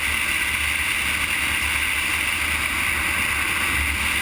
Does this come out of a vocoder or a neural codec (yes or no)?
no